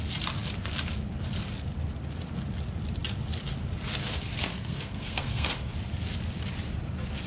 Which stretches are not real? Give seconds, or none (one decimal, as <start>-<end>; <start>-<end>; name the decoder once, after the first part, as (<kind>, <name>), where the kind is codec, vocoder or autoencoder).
4.5-5.7 (codec, SNAC)